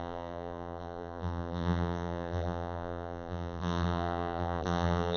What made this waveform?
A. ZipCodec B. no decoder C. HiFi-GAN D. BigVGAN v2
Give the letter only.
D